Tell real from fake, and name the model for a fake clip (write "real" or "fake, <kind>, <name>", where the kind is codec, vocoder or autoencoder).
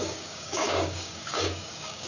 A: fake, codec, DAC